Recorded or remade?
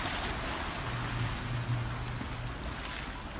recorded